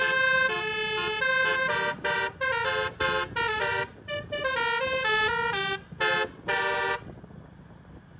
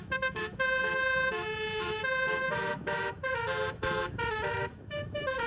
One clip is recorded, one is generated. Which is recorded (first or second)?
first